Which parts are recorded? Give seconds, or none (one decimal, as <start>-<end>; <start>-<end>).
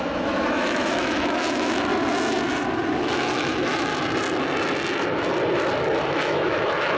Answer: 1.9-2.9; 3.9-6.1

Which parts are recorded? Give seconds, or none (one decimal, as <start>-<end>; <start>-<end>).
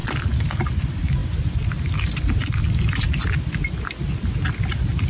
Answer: 0.0-5.1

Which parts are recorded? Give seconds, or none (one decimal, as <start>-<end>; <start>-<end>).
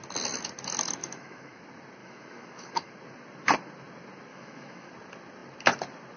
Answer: 0.0-1.0; 1.6-2.0; 2.9-4.3; 4.9-6.2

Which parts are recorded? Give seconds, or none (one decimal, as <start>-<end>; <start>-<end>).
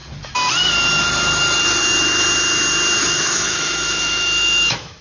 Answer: 0.0-3.0